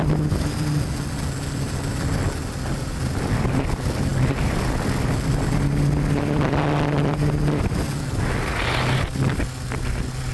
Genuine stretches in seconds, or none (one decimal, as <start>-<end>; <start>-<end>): 0.0-10.3